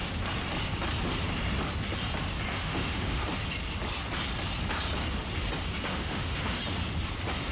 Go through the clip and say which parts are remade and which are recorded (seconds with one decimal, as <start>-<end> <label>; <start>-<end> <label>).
0.0-2.5 recorded; 2.5-3.2 remade; 3.2-5.9 recorded; 5.9-6.6 remade; 6.6-7.5 recorded